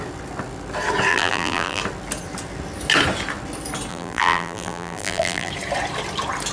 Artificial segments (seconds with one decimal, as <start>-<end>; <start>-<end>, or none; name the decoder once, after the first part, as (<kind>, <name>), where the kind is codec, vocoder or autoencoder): 1.1-1.8 (vocoder, BigVGAN v2); 3.9-5.5